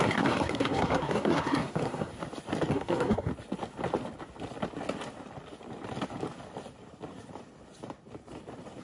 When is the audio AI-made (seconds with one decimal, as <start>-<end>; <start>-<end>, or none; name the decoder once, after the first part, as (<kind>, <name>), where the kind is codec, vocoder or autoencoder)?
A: 0.0-2.1 (codec, SNAC); 2.7-3.3